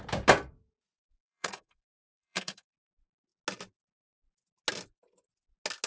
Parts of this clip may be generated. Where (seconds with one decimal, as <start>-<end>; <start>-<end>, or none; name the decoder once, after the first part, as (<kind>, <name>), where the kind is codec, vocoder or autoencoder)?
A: 1.2-2.7 (codec, SNAC)